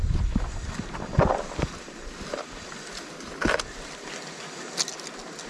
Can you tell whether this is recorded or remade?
recorded